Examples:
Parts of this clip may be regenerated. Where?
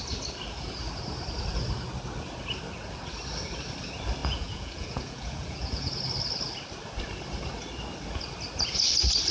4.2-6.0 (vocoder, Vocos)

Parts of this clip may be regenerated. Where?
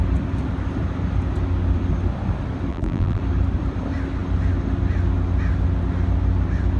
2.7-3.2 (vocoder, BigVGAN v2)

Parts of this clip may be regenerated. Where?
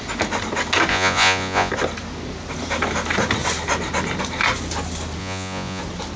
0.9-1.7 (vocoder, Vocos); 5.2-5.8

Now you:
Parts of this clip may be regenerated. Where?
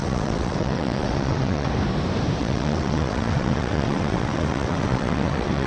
0.0-1.7 (vocoder, WaveNeXt); 2.4-5.7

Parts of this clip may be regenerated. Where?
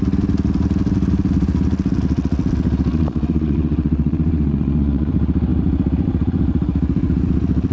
2.9-5.1 (vocoder, Vocos)